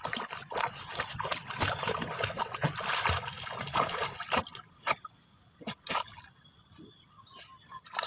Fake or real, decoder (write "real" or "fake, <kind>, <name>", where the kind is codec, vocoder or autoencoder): real